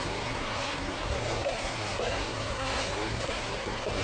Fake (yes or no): yes